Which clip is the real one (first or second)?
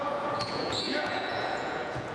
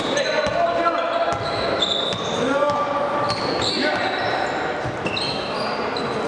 second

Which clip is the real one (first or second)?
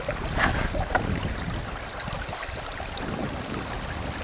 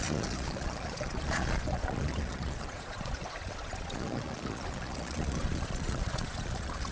first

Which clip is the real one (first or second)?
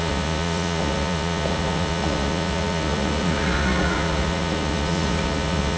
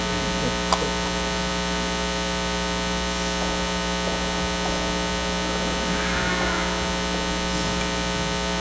second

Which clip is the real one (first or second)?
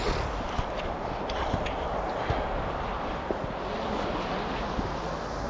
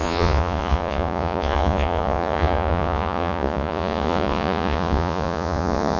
first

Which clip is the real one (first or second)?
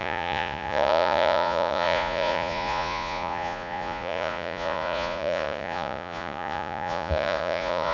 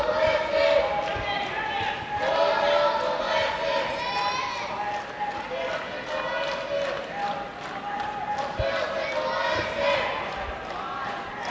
second